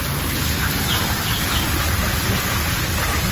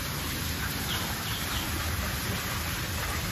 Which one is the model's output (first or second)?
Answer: second